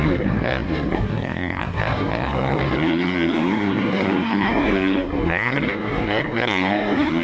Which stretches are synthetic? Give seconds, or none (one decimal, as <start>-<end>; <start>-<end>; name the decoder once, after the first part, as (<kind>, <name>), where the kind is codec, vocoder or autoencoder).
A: 0.0-7.2 (codec, SNAC)